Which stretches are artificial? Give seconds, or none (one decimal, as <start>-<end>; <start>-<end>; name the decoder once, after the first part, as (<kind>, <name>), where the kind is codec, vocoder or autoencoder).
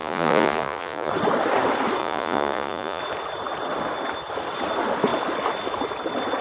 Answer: 0.0-1.1 (vocoder, Vocos); 2.0-3.0